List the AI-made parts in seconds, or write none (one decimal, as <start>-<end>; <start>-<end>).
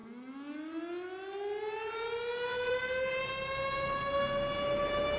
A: 2.5-3.2